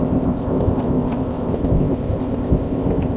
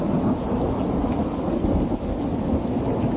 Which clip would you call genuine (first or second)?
second